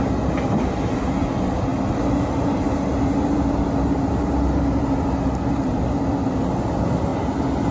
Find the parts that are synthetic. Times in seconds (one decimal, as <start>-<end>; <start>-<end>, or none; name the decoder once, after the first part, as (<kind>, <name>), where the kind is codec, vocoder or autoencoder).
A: none